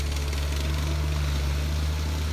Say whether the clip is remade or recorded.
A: recorded